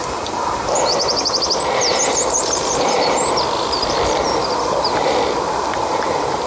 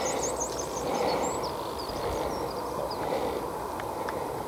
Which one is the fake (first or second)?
first